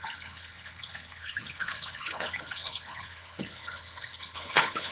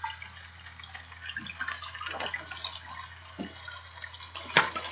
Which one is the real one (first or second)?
second